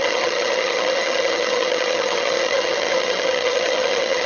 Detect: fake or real fake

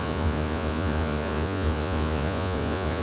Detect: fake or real fake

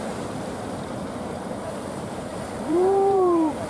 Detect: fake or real fake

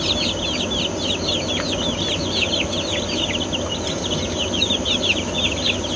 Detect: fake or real real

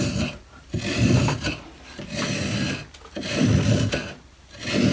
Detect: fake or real real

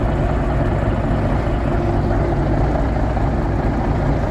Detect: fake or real real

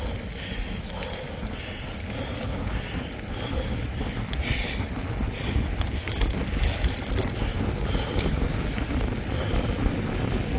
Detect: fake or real real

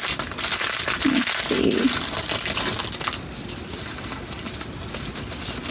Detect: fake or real real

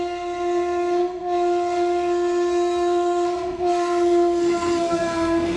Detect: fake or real fake